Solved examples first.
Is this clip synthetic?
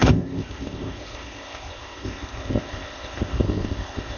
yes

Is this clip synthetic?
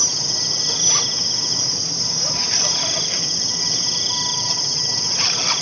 no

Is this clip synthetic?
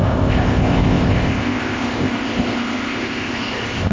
yes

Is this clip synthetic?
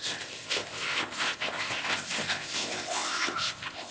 yes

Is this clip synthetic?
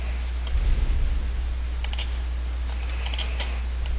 no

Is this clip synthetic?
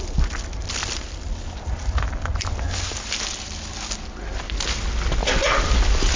no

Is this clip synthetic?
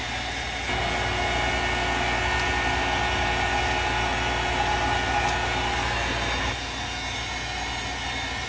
no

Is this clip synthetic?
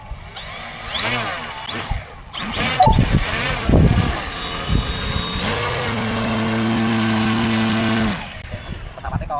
no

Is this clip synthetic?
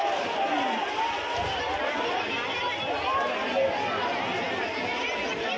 no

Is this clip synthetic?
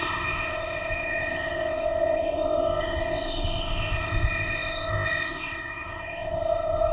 yes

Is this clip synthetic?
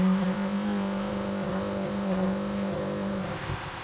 yes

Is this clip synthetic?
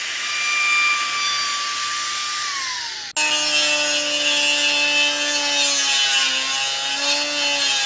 no